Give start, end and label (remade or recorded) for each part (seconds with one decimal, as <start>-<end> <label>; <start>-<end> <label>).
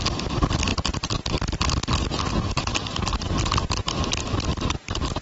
0.0-5.2 recorded